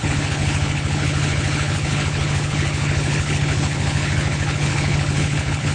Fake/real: fake